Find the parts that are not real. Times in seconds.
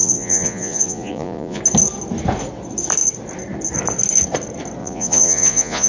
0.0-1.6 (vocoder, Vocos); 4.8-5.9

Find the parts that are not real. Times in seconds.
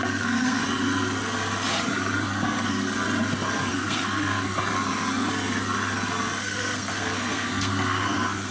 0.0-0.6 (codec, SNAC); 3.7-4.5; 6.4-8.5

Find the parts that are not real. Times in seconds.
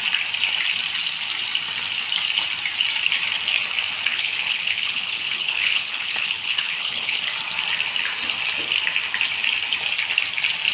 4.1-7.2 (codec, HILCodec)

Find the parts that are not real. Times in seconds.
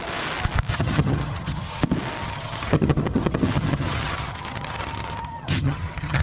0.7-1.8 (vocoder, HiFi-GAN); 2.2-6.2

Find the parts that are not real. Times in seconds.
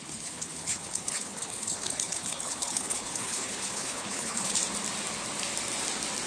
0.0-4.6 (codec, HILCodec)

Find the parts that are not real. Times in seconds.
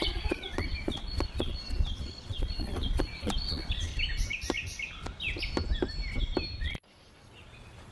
0.0-3.9 (vocoder, Vocos); 6.6-7.9